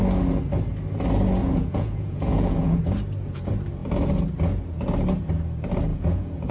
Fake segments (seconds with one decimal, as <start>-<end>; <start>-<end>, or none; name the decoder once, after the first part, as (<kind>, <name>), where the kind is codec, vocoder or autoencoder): 1.4-2.8 (vocoder, Vocos); 5.9-6.5